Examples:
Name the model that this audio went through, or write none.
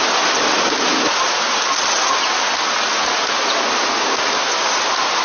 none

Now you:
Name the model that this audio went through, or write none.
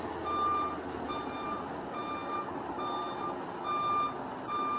none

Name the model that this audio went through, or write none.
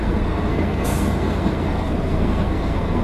codec, SNAC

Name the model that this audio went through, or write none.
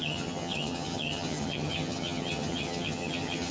vocoder, HiFi-GAN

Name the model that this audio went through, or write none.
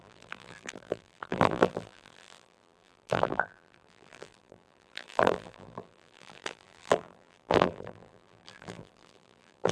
vocoder, BigVGAN v2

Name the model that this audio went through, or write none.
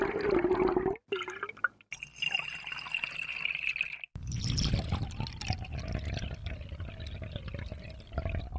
none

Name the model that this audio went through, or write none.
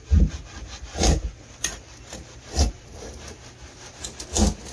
none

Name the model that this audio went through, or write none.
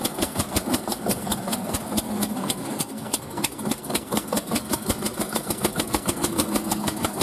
codec, SNAC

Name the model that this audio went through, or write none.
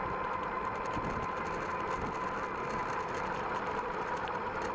none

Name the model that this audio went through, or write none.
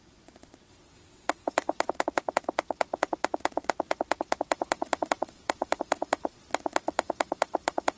vocoder, WaveNeXt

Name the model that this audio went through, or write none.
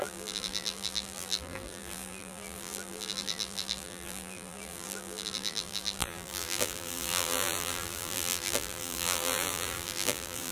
vocoder, BigVGAN v2